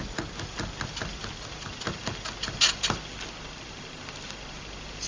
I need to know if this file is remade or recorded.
recorded